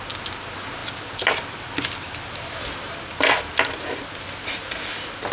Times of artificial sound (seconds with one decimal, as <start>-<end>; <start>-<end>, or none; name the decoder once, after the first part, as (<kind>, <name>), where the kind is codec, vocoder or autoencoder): none